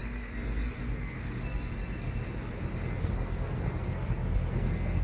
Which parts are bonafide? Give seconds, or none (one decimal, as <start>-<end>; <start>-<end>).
2.2-3.0